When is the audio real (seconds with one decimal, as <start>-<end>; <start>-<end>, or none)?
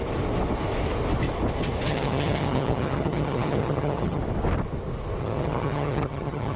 0.0-1.9; 4.2-5.2